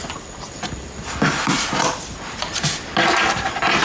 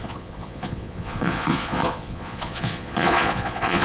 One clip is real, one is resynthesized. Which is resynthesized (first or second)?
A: second